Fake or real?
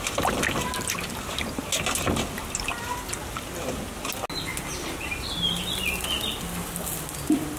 real